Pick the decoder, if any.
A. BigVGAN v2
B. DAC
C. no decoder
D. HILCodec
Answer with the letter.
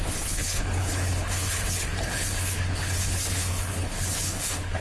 D